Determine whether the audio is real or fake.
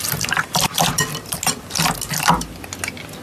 real